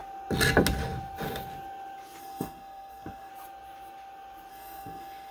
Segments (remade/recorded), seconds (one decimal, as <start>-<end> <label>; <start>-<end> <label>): 0.0-2.2 recorded; 2.2-3.3 remade; 3.3-4.5 recorded; 4.5-5.3 remade